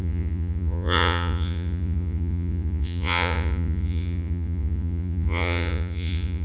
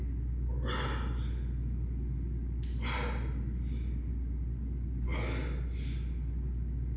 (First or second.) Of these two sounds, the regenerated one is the first